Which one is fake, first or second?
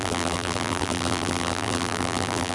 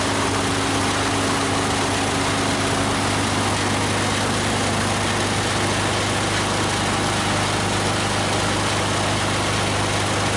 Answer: first